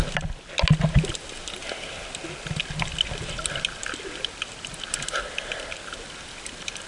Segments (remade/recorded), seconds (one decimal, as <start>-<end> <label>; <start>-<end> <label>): 0.0-6.9 recorded